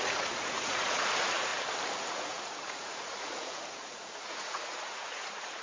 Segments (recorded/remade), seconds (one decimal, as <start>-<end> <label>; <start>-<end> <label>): 0.0-1.5 remade; 1.5-2.1 recorded; 2.1-5.6 remade